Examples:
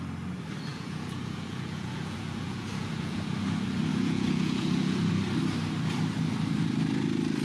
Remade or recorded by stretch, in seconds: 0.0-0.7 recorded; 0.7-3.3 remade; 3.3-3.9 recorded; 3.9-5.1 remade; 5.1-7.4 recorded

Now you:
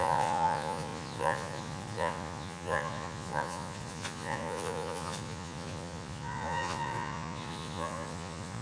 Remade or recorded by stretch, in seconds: 0.0-8.6 remade

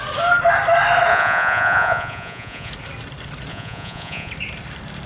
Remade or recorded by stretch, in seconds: 0.0-1.1 recorded; 1.1-2.7 remade; 2.7-3.5 recorded; 3.5-4.3 remade; 4.3-5.1 recorded

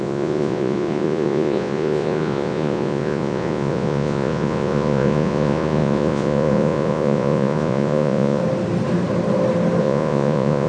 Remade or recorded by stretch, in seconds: 0.0-8.4 remade; 8.4-9.8 recorded; 9.8-10.7 remade